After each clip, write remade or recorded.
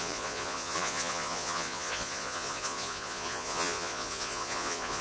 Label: remade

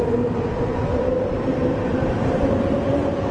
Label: recorded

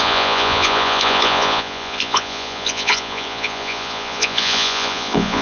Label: remade